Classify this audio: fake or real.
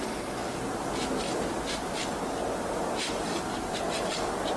real